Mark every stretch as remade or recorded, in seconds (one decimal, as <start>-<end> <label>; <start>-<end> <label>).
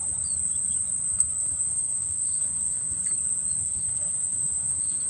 0.0-1.1 recorded; 1.1-3.0 remade; 3.0-3.6 recorded; 3.6-5.1 remade